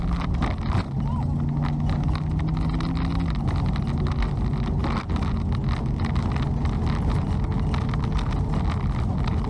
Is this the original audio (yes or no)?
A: yes